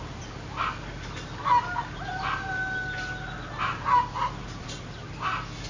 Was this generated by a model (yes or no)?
no